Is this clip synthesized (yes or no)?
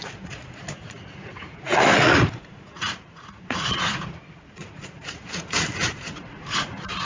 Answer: yes